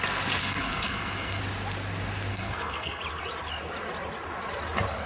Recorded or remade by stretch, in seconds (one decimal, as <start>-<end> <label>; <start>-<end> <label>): 0.0-0.4 recorded; 0.4-1.4 remade; 1.4-2.3 recorded; 2.3-3.0 remade; 3.0-5.1 recorded